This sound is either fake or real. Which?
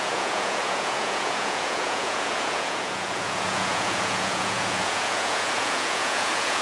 fake